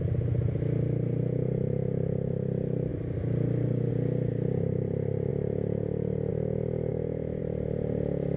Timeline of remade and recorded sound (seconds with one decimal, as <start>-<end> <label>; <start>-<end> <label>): 0.0-6.9 recorded; 6.9-7.4 remade; 7.4-8.4 recorded